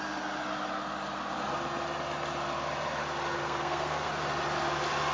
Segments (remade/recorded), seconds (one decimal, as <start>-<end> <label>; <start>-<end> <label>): 0.0-3.4 recorded; 3.4-4.1 remade; 4.1-5.1 recorded

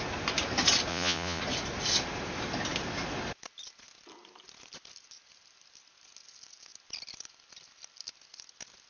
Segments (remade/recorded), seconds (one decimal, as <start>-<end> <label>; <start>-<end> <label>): 0.0-0.9 recorded; 0.9-1.4 remade; 1.4-8.9 recorded

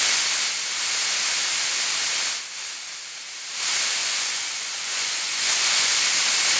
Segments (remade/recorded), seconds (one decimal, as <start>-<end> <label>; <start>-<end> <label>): 0.0-4.0 recorded; 4.0-5.9 remade; 5.9-6.6 recorded

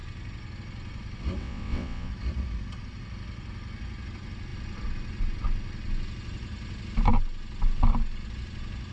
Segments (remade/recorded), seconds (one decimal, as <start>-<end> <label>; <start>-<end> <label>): 0.0-1.4 recorded; 1.4-2.1 remade; 2.1-8.9 recorded

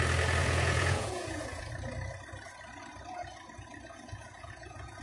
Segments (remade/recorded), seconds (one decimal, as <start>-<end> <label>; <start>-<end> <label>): 0.0-0.4 recorded; 0.4-1.7 remade; 1.7-3.9 recorded; 3.9-5.0 remade

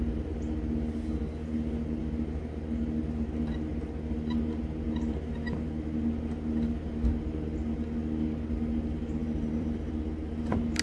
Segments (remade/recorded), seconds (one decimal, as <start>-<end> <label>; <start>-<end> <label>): 0.0-9.2 recorded; 9.2-9.9 remade; 9.9-10.8 recorded

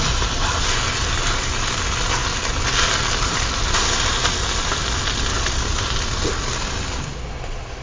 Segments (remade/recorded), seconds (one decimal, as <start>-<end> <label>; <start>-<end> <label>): 0.0-7.8 recorded